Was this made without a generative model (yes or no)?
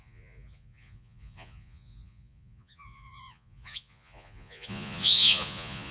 no